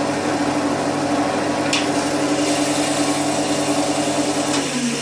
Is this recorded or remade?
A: recorded